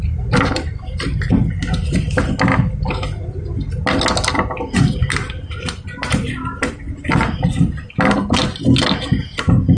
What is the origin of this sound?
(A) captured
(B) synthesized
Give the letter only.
A